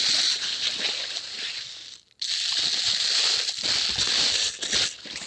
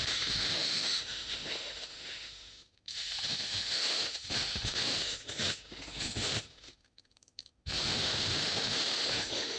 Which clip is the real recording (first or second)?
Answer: first